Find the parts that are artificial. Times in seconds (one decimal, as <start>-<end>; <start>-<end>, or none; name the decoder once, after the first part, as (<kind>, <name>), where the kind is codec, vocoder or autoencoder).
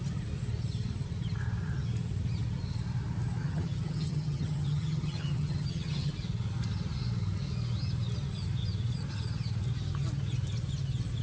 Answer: 3.4-6.1 (vocoder, HiFi-GAN)